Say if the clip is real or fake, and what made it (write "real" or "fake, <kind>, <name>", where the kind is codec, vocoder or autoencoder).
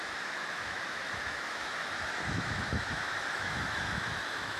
fake, autoencoder, DAC-VAE